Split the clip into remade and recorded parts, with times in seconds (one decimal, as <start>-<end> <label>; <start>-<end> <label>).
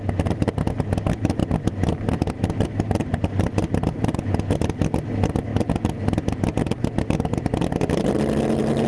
0.0-1.4 recorded; 1.4-4.2 remade; 4.2-8.9 recorded